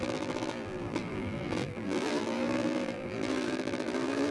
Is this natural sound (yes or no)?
no